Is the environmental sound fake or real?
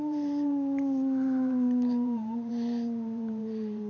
fake